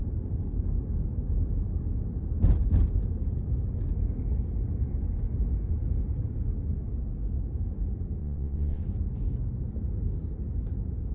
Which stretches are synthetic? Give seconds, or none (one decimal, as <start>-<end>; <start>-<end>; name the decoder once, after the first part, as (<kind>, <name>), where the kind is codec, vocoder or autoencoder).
8.2-8.8 (vocoder, WaveNeXt)